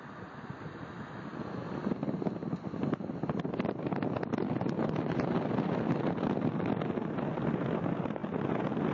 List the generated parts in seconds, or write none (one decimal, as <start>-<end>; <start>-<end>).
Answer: none

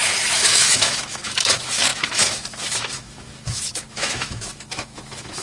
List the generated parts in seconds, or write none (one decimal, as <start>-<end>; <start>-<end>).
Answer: 0.0-5.4

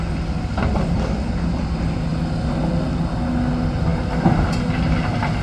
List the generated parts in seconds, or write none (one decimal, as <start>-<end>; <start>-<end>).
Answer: none

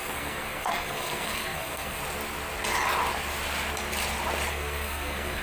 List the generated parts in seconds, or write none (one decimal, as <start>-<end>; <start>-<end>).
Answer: 0.0-2.0; 4.5-5.4

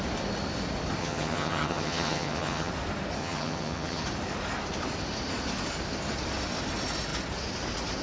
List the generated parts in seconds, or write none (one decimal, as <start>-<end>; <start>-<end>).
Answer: 1.0-2.7; 3.2-4.0

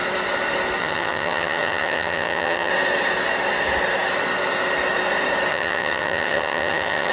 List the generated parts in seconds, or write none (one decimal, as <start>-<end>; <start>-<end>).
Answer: 0.8-2.7; 5.5-7.1